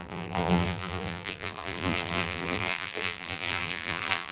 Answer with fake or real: fake